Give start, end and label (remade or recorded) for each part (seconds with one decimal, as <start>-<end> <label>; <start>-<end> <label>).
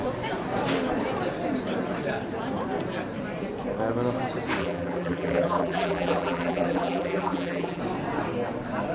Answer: 0.0-4.6 recorded; 4.6-7.8 remade; 7.8-8.9 recorded